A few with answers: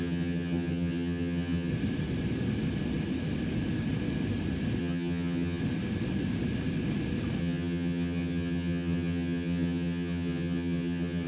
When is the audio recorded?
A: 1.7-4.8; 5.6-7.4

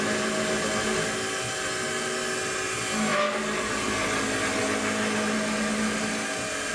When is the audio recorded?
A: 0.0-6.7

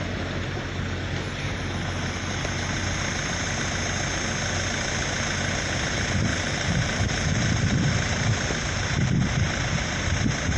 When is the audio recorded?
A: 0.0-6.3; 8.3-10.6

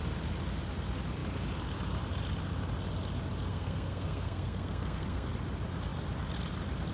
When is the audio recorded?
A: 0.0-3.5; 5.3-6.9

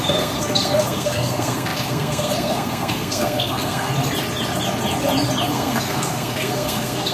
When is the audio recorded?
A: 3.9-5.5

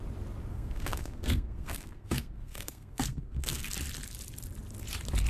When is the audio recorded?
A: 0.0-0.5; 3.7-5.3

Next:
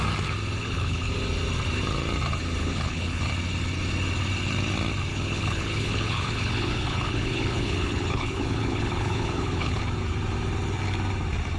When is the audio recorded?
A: 0.0-0.6; 1.1-2.6; 3.2-5.1; 9.8-11.6

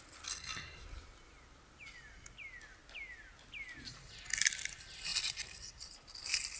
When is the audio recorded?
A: 0.0-6.6